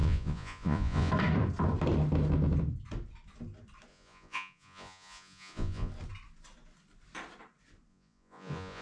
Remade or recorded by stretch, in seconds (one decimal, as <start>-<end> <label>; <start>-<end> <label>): 0.0-1.1 remade; 1.1-3.9 recorded; 3.9-5.9 remade; 5.9-7.9 recorded; 7.9-8.8 remade